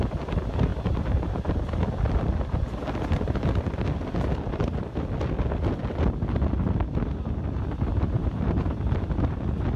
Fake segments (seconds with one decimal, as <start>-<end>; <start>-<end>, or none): 0.7-1.6; 5.8-6.4; 7.9-9.4